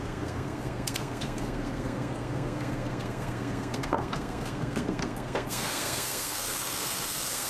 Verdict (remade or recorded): remade